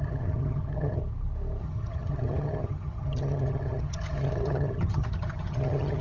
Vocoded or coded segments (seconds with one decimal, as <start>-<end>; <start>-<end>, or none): 0.0-1.0; 1.6-6.0